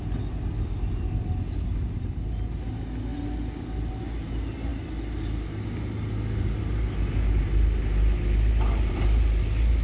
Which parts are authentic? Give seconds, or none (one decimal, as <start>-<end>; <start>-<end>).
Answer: 0.0-9.8